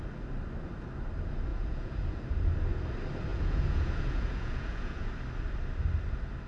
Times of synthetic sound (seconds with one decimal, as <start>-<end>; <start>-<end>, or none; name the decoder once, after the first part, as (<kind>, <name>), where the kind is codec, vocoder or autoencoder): 1.5-2.1 (vocoder, Vocos); 3.3-5.1